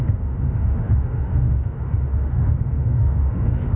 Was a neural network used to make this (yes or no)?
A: yes